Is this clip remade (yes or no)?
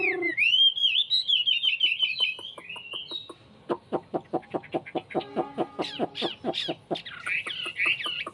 no